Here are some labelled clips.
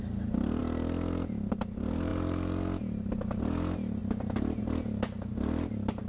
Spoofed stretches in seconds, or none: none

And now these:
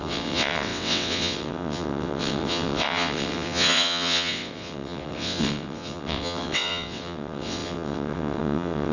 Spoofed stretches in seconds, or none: 0.0-8.9

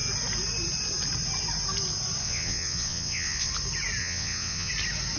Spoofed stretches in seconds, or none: 2.2-3.5; 4.0-4.7

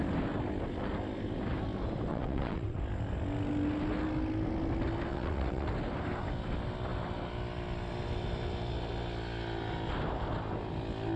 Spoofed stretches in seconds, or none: 2.1-2.8; 5.1-5.7

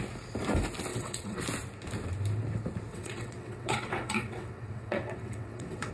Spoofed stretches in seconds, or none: 0.9-1.4; 2.9-5.9